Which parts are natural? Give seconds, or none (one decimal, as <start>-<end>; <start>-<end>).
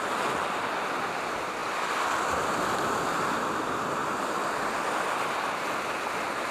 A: 0.0-1.6; 2.5-6.5